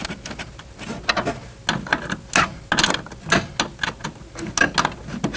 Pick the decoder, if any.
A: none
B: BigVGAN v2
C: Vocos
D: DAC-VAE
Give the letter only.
A